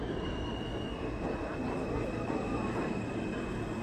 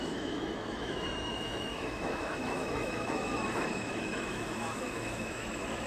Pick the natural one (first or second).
first